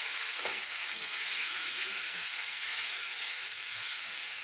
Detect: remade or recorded remade